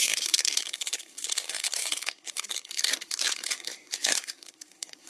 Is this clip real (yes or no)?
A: no